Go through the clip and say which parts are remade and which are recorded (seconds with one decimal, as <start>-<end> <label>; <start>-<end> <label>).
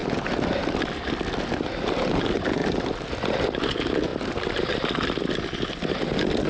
0.0-6.5 recorded